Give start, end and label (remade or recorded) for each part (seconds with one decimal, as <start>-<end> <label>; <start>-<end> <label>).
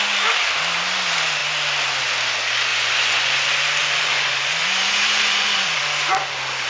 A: 0.0-2.7 recorded; 2.7-3.3 remade; 3.3-3.8 recorded; 3.8-5.8 remade; 5.8-6.7 recorded